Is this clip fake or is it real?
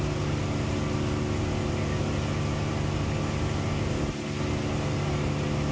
real